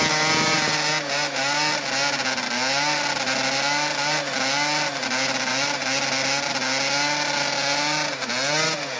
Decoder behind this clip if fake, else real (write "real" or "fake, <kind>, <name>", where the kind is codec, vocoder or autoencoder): real